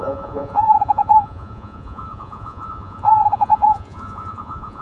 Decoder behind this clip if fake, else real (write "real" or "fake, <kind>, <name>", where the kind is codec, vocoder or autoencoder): fake, vocoder, Vocos